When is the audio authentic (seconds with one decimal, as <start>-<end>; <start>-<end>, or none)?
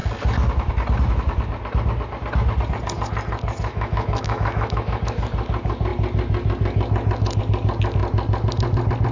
0.0-3.7; 5.0-9.1